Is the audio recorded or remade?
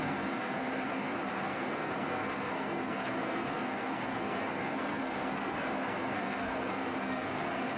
remade